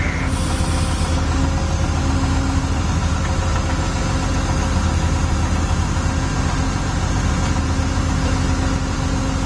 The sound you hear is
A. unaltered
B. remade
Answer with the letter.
A